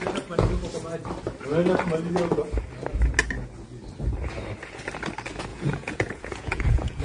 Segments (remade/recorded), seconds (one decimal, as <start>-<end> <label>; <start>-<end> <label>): 0.0-5.5 recorded; 5.5-7.0 remade